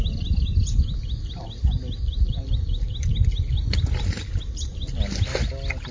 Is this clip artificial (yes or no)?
no